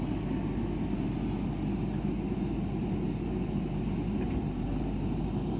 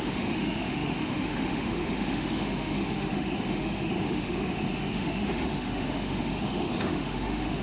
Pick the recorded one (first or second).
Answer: first